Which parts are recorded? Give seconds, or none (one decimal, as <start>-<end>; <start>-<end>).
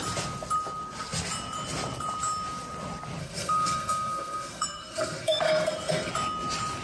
0.0-3.2; 6.1-6.8